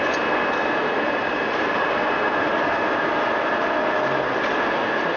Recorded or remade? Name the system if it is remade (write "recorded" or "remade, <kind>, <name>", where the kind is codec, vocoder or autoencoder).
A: recorded